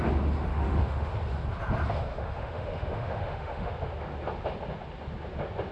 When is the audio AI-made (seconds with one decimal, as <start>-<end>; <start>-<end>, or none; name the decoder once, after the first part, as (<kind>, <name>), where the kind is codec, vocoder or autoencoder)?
0.5-1.1 (autoencoder, DAC-VAE); 2.1-3.7

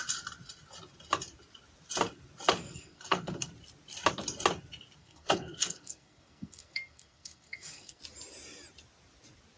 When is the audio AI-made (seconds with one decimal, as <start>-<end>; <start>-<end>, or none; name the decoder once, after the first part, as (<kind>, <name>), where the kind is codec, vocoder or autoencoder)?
2.6-3.5 (codec, SNAC); 5.0-8.0

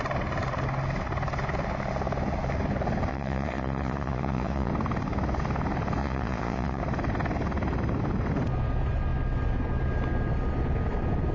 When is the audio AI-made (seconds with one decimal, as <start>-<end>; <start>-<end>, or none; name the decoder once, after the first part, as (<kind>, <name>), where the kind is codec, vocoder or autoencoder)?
3.1-4.7 (vocoder, Vocos); 6.0-6.8